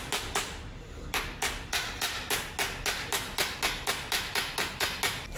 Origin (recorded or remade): recorded